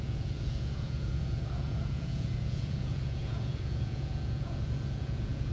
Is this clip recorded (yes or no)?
no